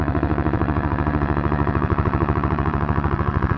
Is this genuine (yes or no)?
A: no